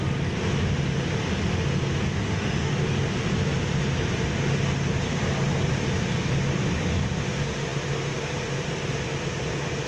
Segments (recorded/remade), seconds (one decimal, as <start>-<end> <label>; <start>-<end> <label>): 0.0-2.2 recorded; 2.2-2.7 remade; 2.7-9.9 recorded